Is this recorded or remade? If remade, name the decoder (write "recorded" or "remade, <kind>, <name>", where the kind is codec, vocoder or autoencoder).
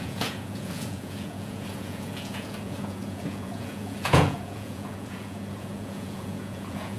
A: remade, vocoder, Vocos